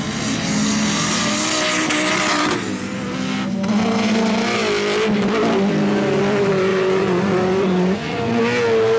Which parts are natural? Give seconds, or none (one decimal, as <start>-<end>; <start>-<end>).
0.0-6.7; 8.4-9.0